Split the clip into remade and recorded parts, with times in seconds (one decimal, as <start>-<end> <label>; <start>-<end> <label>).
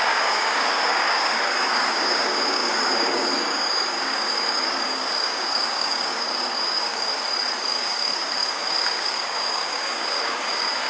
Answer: 0.0-7.1 remade; 7.1-7.7 recorded; 7.7-10.9 remade